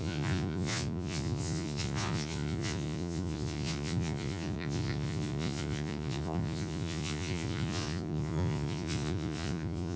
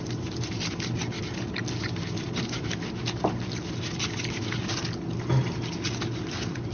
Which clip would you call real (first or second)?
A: second